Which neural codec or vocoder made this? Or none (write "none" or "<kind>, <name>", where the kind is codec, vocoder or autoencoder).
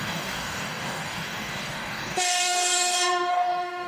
codec, DAC